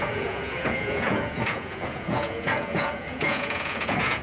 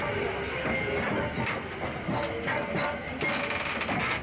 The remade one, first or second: first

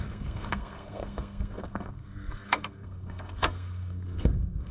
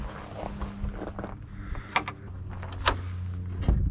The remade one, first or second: first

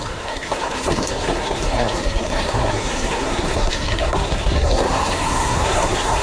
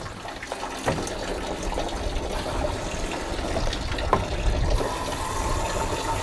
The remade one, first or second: first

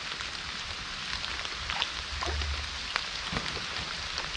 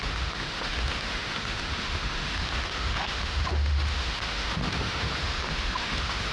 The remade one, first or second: second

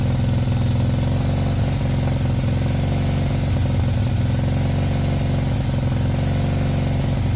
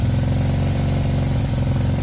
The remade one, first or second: second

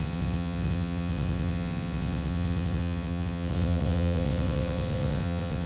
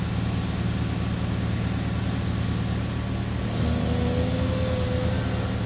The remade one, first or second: first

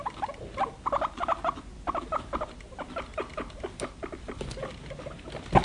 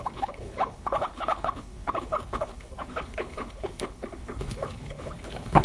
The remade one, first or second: second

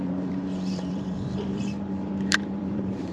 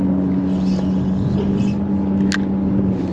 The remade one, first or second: first